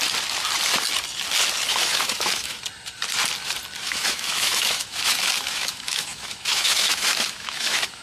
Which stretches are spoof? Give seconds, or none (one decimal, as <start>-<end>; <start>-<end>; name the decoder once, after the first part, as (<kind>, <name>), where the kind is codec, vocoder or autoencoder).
1.7-2.6 (autoencoder, DAC-VAE); 3.8-8.0